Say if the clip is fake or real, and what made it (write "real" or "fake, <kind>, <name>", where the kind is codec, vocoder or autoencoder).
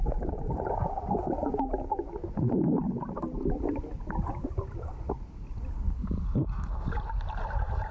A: real